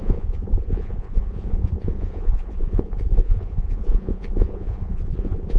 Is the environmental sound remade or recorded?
remade